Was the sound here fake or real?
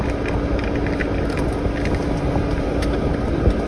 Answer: real